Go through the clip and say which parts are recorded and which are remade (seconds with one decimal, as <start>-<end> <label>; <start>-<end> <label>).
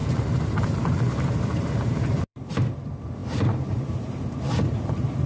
0.0-2.5 remade; 2.5-3.2 recorded; 3.2-5.3 remade